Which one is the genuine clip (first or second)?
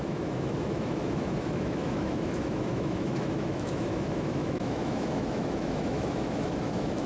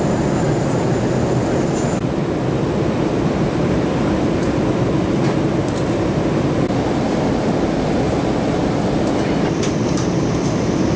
second